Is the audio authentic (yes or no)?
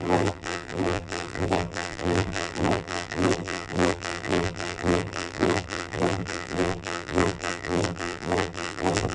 no